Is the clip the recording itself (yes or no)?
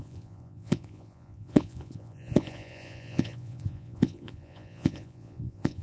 no